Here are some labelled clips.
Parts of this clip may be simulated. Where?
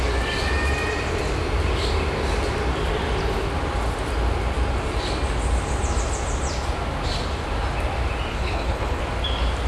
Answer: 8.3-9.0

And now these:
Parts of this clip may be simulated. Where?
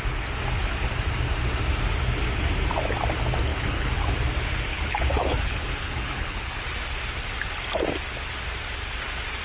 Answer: 3.5-4.1; 4.7-6.6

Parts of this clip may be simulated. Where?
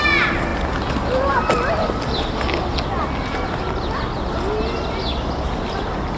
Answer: none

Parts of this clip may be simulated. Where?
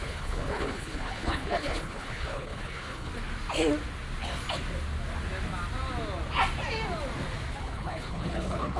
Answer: 0.0-3.1; 7.6-8.8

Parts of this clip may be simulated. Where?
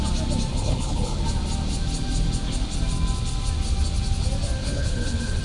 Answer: 0.5-1.2; 4.6-5.4